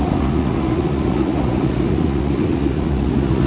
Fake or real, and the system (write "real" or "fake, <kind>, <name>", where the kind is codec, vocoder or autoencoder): fake, vocoder, Vocos